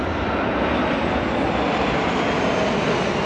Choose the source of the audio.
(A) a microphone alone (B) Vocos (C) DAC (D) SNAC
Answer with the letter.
A